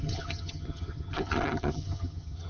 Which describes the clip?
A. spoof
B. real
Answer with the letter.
A